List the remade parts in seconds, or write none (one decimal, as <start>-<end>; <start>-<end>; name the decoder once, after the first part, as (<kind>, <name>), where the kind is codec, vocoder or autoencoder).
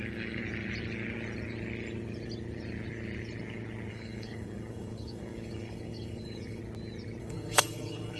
0.0-0.4 (codec, DAC); 3.9-6.6; 7.2-8.2